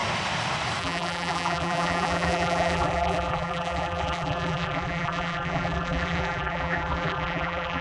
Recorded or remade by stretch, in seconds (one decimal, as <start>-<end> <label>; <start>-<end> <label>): 0.0-0.8 recorded; 0.8-7.8 remade